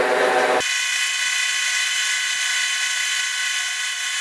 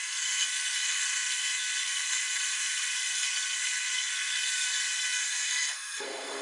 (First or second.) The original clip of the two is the first